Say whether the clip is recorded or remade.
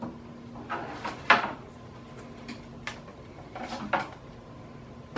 recorded